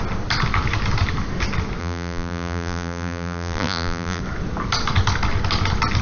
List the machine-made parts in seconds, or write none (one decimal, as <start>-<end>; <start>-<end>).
1.8-4.2